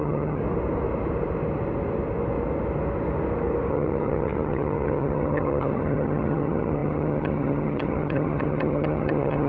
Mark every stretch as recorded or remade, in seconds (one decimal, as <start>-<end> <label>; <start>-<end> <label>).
0.0-0.4 remade; 0.4-3.7 recorded; 3.7-9.5 remade